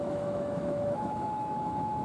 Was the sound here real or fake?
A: fake